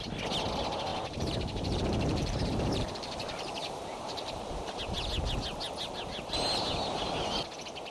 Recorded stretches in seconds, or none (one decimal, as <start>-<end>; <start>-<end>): 0.0-0.9; 4.8-7.9